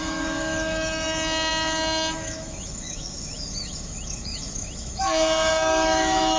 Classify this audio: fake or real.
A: fake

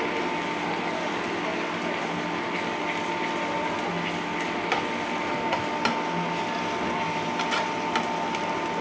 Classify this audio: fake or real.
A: real